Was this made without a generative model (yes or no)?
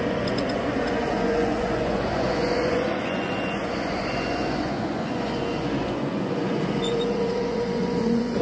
no